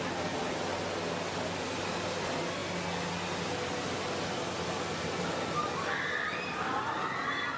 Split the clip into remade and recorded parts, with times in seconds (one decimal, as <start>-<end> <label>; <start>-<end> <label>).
0.0-7.6 recorded